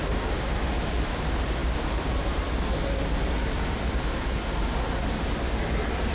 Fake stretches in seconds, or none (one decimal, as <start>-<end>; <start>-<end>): none